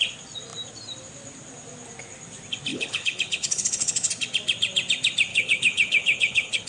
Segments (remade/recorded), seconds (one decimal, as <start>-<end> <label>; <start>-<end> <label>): 0.0-2.7 recorded; 2.7-4.1 remade; 4.1-5.3 recorded; 5.3-6.7 remade